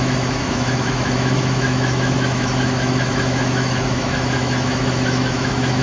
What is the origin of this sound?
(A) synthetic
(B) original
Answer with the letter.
A